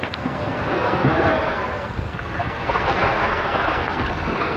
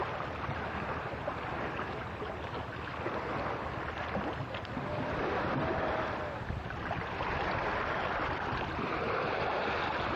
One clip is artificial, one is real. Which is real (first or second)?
second